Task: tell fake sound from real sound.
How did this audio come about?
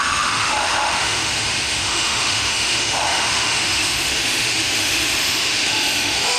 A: fake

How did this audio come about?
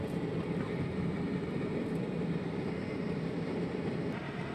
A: real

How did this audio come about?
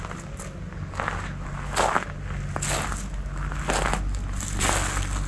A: real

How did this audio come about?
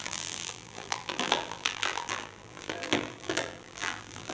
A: fake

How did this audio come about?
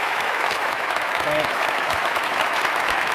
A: fake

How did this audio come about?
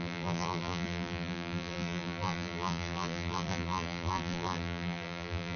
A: fake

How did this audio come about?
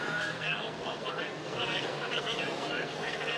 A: fake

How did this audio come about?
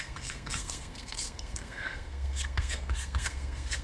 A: fake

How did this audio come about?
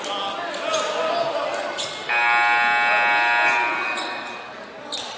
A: real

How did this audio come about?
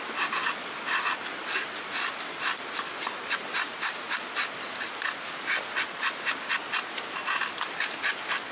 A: real